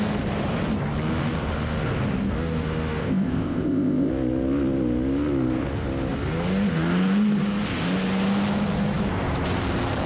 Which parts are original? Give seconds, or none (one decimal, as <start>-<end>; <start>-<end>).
0.0-3.0; 4.1-10.1